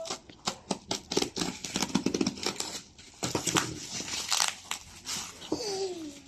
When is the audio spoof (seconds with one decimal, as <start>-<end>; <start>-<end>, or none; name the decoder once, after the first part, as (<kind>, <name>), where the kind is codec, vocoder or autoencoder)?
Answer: 2.4-3.1 (vocoder, BigVGAN v2)